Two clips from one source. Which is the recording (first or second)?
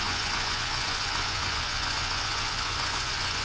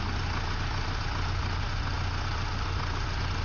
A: second